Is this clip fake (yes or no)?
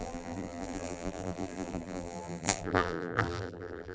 yes